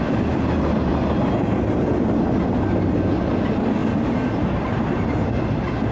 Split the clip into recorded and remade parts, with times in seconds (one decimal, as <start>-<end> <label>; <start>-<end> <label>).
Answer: 0.0-5.9 recorded